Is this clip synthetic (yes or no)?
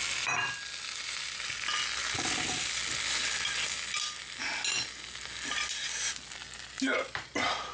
no